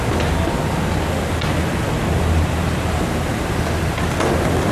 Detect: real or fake real